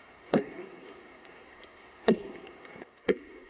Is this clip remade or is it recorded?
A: remade